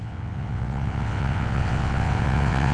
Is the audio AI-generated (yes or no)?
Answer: yes